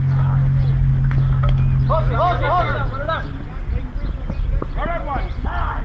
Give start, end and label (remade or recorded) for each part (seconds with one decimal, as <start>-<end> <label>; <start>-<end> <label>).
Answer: 0.0-5.8 recorded